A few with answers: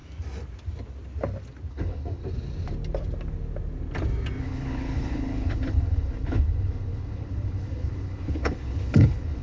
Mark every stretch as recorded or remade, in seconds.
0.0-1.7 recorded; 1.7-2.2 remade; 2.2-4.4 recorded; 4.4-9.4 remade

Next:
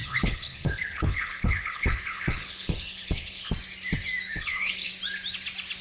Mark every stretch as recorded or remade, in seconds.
0.0-3.5 remade; 3.5-4.3 recorded; 4.3-4.9 remade; 4.9-5.8 recorded

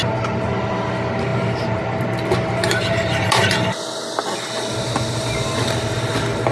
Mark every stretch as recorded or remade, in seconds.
0.0-6.5 recorded

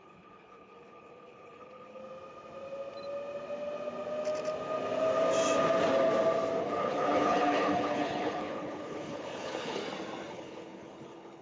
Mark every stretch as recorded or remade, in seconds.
0.0-2.0 remade; 2.0-6.6 recorded; 6.6-9.8 remade; 9.8-10.3 recorded; 10.3-11.4 remade